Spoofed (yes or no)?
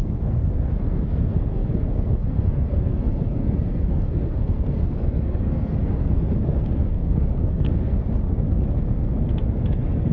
yes